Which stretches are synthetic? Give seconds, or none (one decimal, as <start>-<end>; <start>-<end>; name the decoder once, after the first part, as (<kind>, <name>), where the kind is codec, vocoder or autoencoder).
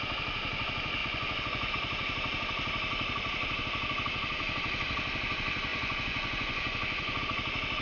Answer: 1.0-1.7 (vocoder, Vocos); 5.7-7.2